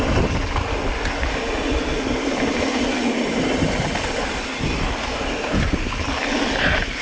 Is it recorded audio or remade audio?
recorded